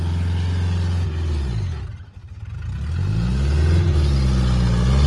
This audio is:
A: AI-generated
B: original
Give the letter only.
B